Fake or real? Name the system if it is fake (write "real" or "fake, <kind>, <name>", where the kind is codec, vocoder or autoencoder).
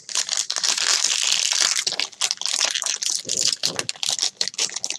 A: real